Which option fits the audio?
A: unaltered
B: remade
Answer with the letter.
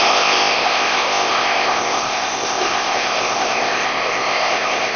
B